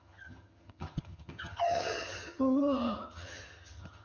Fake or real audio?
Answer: fake